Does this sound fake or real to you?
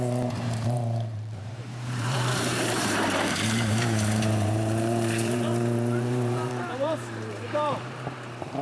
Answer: fake